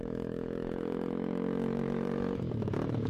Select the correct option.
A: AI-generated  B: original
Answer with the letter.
A